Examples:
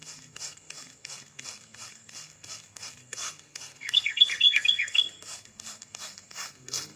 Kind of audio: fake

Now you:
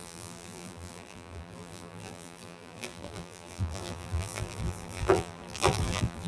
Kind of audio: fake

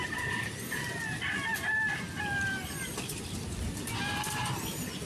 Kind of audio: fake